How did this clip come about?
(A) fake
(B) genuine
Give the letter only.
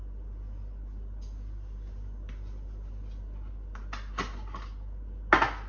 B